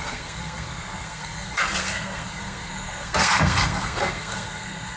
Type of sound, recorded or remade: remade